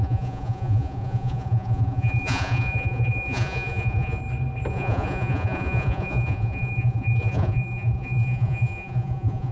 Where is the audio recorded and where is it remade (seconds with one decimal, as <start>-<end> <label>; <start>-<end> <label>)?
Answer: 0.0-4.2 remade; 4.2-4.7 recorded; 4.7-9.5 remade